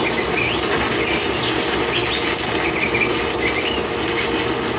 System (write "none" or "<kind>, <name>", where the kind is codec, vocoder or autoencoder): none